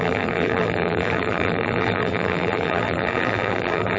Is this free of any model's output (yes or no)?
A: no